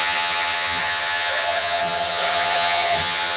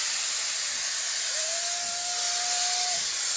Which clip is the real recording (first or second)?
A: second